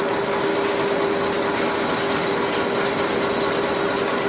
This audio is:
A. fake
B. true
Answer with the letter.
B